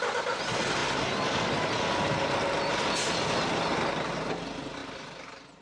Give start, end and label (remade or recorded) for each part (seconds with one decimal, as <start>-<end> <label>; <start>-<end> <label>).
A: 0.0-5.6 recorded